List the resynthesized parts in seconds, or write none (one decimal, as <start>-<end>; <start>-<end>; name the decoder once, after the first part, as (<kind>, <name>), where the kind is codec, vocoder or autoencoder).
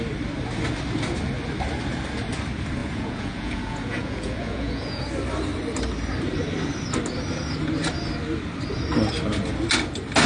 2.8-5.0 (vocoder, Vocos)